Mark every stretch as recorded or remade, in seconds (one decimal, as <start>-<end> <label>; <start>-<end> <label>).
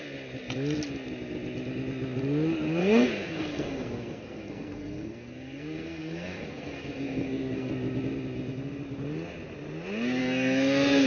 0.0-2.8 recorded; 2.8-7.7 remade; 7.7-10.2 recorded; 10.2-11.1 remade